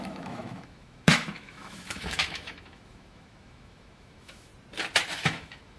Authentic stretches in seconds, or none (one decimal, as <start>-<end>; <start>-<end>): 4.5-5.1